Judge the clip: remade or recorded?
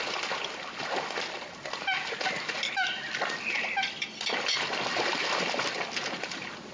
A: recorded